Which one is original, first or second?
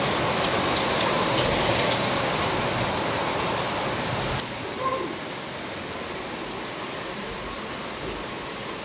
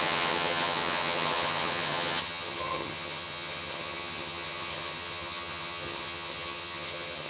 first